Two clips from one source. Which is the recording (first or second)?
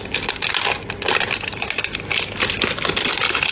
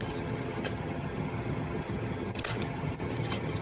first